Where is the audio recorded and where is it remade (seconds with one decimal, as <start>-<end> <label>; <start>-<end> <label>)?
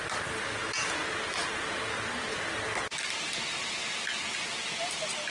0.0-5.3 recorded